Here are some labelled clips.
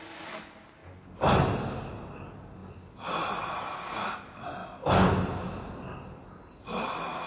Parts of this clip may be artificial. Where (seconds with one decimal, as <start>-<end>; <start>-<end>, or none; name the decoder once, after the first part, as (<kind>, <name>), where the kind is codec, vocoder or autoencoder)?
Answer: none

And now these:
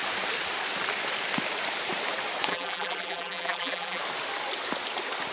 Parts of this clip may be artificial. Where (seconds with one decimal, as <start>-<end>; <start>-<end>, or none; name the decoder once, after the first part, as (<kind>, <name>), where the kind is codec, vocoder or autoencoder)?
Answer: 2.5-4.0 (vocoder, BigVGAN v2)

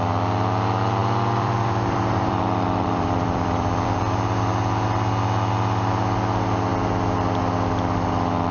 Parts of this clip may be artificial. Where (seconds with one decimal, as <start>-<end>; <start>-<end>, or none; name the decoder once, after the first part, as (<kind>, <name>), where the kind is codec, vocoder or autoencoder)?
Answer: 1.0-4.0 (vocoder, BigVGAN v2)

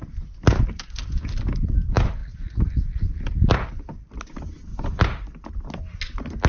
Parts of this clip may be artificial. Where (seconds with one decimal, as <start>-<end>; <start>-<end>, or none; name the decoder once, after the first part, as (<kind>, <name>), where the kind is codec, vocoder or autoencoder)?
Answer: 4.7-5.5 (vocoder, BigVGAN v2)

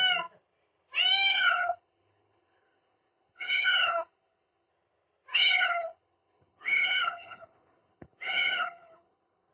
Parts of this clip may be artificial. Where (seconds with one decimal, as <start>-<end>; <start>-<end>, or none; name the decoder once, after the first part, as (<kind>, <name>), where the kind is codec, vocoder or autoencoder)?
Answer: 1.3-4.7 (codec, HILCodec); 5.3-9.5

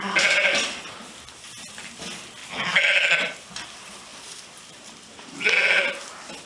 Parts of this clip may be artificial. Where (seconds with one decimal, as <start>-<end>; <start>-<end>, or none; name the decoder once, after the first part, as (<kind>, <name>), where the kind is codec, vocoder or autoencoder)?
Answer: 2.4-3.5 (vocoder, BigVGAN v2); 4.1-5.9

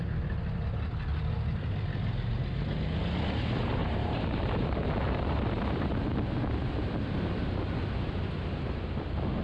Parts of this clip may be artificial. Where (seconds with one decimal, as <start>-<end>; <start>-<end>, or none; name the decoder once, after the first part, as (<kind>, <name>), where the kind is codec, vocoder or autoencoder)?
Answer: 3.8-6.0 (vocoder, BigVGAN v2)